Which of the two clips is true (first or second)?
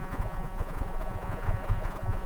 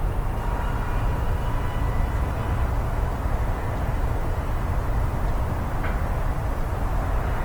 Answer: second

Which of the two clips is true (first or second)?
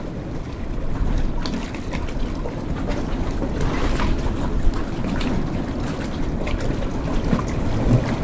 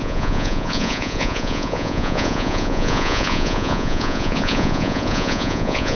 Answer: first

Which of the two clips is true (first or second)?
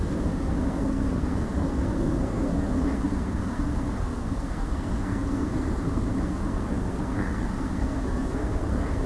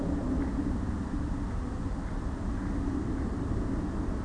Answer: second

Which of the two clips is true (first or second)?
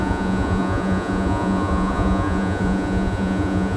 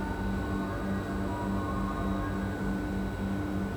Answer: second